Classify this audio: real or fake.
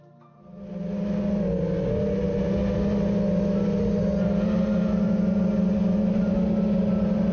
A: real